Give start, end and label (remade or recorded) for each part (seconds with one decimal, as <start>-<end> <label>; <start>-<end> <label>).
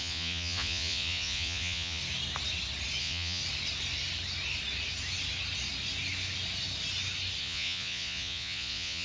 0.0-2.0 remade; 2.0-3.0 recorded; 3.0-3.4 remade; 3.4-7.4 recorded; 7.4-9.0 remade